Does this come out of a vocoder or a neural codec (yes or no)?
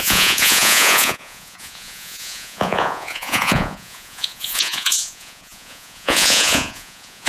yes